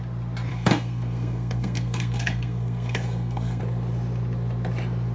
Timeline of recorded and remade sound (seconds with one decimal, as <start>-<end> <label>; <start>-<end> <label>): 0.0-0.5 recorded; 0.5-3.6 remade; 3.6-5.1 recorded